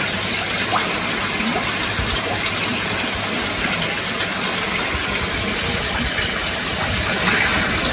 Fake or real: real